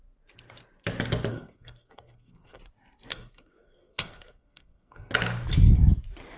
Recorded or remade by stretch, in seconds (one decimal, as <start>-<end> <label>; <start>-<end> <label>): 0.0-1.3 recorded; 1.3-2.6 remade; 2.6-3.1 recorded; 3.1-5.1 remade; 5.1-6.4 recorded